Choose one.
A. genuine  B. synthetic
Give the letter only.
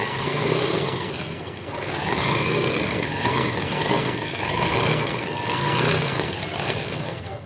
B